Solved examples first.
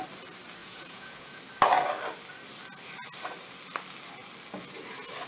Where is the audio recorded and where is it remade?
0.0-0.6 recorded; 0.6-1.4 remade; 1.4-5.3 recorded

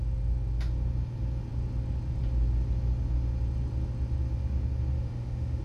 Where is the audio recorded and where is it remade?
0.0-4.9 recorded; 4.9-5.6 remade

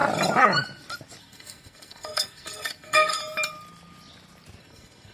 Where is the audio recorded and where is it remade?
0.0-1.2 recorded; 1.2-3.2 remade; 3.2-4.6 recorded; 4.6-5.1 remade

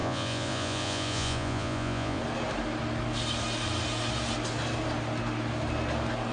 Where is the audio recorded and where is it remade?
0.0-2.2 remade; 2.2-6.3 recorded